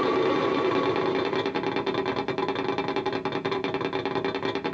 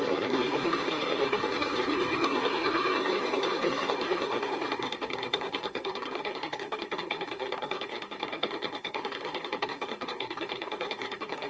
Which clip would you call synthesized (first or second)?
second